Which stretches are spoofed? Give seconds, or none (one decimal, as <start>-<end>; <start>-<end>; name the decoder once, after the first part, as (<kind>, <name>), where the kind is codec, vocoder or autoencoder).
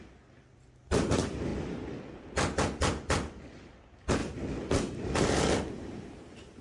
none